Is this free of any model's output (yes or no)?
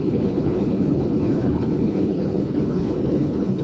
no